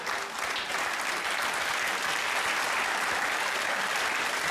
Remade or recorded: recorded